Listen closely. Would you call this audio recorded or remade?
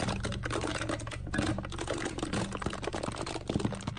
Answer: recorded